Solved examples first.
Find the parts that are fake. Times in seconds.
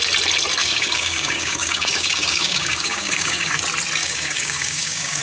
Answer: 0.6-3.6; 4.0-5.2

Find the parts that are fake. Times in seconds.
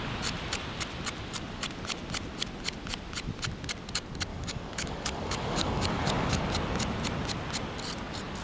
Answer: 4.3-6.4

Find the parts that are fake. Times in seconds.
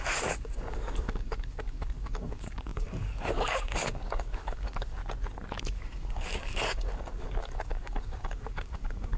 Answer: 0.0-5.0; 5.6-9.2